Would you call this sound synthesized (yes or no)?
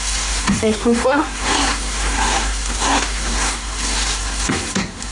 yes